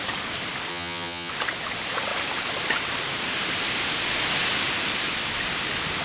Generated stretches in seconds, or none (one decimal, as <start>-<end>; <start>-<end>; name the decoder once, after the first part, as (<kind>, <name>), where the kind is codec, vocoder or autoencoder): 0.7-1.3 (vocoder, HiFi-GAN)